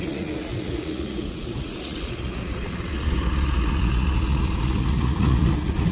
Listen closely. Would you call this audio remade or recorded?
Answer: remade